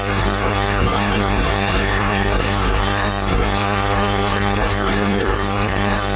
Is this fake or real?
fake